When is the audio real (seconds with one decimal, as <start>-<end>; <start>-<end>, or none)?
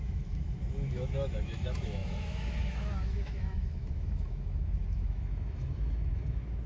none